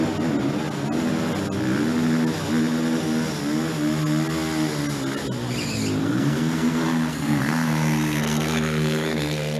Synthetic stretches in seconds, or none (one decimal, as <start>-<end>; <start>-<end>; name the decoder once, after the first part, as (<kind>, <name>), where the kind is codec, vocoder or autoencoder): 6.0-9.6 (codec, SNAC)